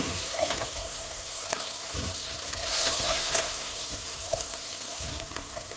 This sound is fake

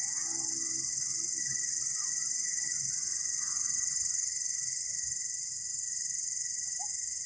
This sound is real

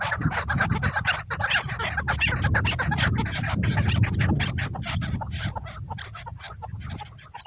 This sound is real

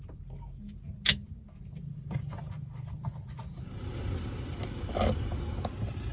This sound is real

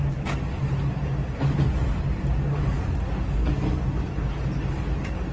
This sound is real